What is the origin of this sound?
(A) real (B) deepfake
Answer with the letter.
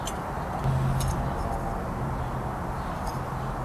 A